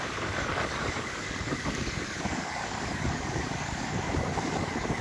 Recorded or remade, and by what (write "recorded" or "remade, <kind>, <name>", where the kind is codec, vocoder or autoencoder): remade, codec, DAC